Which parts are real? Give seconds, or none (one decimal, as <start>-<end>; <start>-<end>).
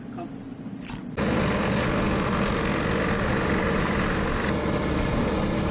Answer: 0.0-5.7